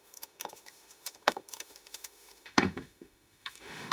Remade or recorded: remade